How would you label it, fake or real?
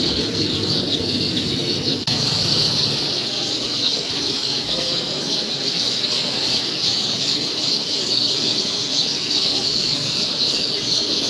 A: fake